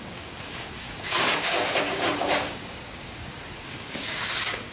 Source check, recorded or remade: remade